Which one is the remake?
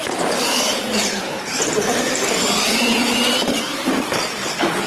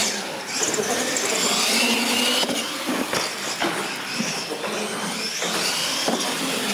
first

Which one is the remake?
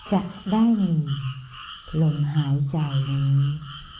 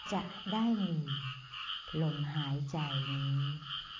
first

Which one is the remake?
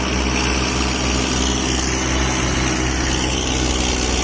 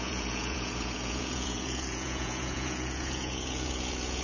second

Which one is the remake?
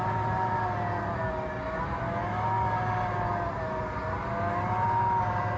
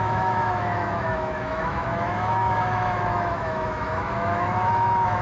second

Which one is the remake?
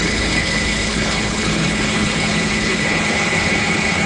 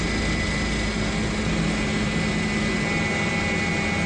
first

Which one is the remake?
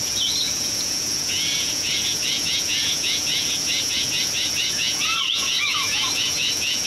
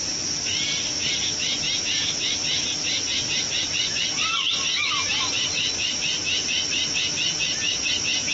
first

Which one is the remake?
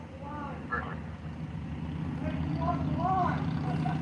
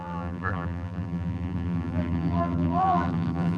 second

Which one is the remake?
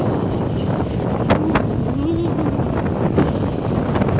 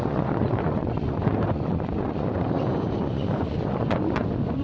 second